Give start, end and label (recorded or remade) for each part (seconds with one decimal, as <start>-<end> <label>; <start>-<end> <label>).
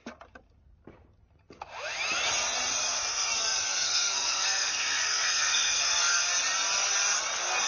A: 0.0-2.8 recorded; 2.8-6.3 remade; 6.3-7.7 recorded